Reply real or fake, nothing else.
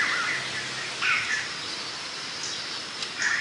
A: real